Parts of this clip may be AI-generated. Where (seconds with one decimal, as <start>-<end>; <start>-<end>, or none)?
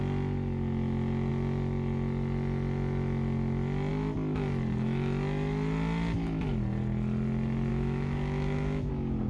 7.7-8.9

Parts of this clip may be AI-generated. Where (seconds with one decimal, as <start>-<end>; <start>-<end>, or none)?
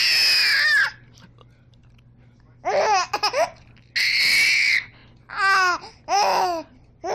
none